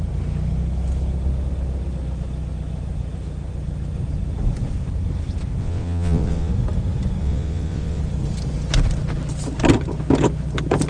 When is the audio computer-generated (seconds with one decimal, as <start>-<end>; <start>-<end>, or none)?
5.6-6.5; 7.2-8.0